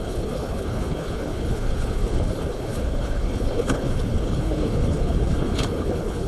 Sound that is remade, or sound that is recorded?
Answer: remade